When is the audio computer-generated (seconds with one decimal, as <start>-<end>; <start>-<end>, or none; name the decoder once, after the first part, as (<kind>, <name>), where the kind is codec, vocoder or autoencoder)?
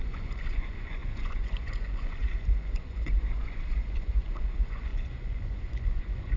0.0-6.4 (vocoder, Vocos)